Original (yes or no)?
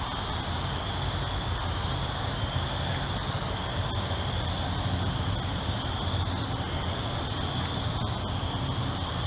yes